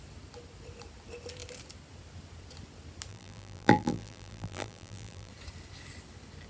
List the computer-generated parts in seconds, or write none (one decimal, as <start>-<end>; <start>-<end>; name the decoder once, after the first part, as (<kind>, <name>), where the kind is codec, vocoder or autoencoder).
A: 3.1-5.3 (vocoder, BigVGAN v2)